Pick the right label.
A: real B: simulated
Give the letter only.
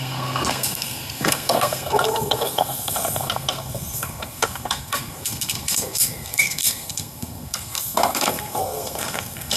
B